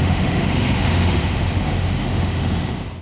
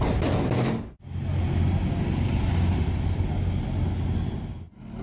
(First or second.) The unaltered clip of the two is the second